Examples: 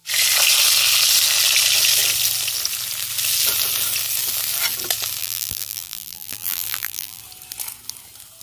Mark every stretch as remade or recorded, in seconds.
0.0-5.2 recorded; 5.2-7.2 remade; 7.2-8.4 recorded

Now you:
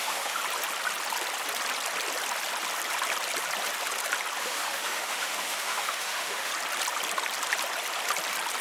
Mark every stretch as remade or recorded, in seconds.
0.0-0.4 remade; 0.4-4.4 recorded; 4.4-6.5 remade; 6.5-8.6 recorded

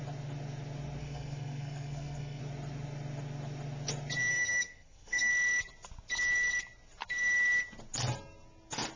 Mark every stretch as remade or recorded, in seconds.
0.0-1.0 recorded; 1.0-2.4 remade; 2.4-4.3 recorded; 4.3-5.3 remade; 5.3-9.0 recorded

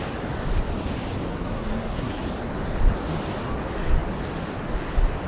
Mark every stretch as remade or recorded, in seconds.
0.0-1.3 recorded; 1.3-2.2 remade; 2.2-5.3 recorded

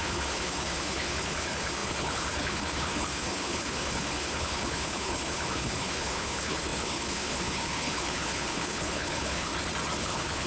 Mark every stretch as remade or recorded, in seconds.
0.0-9.5 remade; 9.5-10.0 recorded; 10.0-10.5 remade